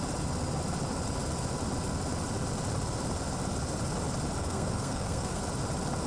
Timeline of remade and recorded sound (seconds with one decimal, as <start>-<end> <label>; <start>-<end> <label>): 0.0-4.4 recorded; 4.4-5.4 remade; 5.4-6.1 recorded